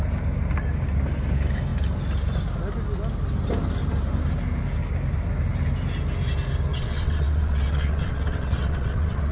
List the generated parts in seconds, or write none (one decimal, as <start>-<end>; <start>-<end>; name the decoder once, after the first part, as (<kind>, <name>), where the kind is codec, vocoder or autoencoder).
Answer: 6.7-9.3 (vocoder, WaveNeXt)